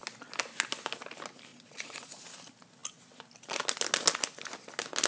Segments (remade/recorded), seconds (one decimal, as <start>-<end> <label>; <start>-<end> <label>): 0.0-1.5 recorded; 1.5-2.2 remade; 2.2-5.1 recorded